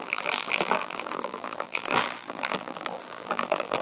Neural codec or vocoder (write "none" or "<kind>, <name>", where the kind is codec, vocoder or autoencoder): vocoder, BigVGAN v2